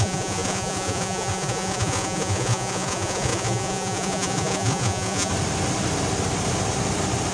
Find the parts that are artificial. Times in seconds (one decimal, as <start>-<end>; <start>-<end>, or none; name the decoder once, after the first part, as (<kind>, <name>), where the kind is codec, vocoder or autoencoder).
0.0-5.3 (vocoder, Vocos)